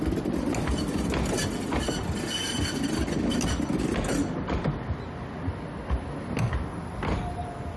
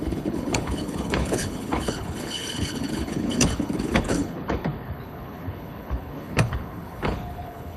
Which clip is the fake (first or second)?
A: second